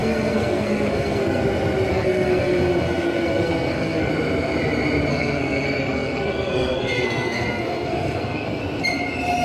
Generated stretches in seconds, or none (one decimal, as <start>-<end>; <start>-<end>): 0.0-1.4; 1.9-4.1; 5.1-8.6